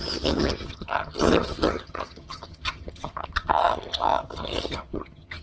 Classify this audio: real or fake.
fake